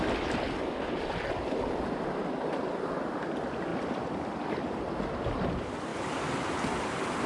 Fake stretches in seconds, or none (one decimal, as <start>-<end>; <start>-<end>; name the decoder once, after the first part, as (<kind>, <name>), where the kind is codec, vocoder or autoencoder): none